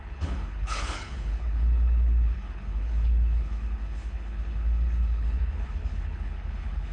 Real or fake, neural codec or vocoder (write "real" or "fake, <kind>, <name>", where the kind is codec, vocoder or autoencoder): fake, codec, HILCodec